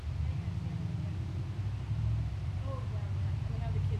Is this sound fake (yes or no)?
no